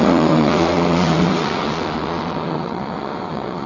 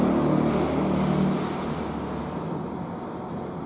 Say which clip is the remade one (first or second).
first